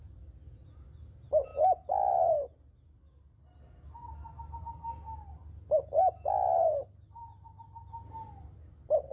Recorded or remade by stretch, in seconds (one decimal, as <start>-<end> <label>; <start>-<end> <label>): 0.0-9.1 recorded